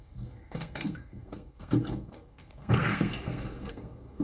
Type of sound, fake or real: fake